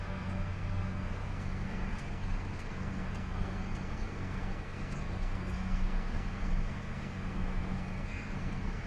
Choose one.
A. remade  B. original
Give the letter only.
A